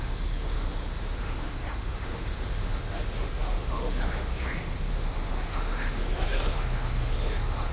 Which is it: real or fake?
fake